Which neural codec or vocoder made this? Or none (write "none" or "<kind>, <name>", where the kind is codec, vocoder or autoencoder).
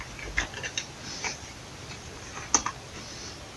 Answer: none